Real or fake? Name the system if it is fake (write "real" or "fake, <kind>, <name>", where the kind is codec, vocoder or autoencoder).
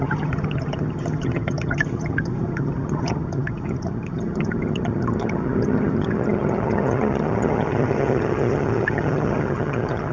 fake, vocoder, HiFi-GAN